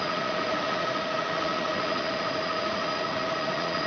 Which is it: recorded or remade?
remade